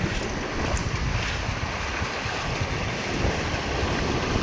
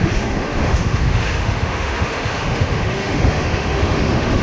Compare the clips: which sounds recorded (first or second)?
first